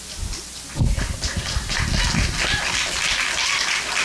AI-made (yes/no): no